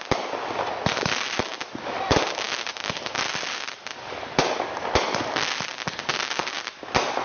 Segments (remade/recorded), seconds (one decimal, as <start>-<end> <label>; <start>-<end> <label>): 0.0-7.2 recorded